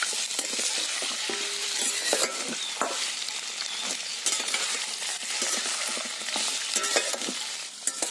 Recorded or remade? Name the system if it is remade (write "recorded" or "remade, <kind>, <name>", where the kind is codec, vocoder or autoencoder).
recorded